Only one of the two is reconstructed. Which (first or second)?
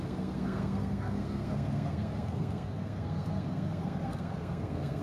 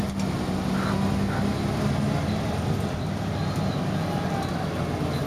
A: first